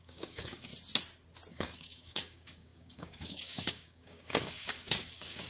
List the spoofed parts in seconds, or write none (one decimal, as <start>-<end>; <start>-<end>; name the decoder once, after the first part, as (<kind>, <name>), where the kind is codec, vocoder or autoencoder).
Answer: 0.0-0.7 (codec, DAC); 1.5-5.5